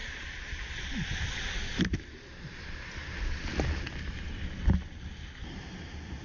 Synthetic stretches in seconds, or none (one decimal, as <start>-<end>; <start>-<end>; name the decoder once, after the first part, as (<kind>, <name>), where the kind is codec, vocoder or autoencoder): none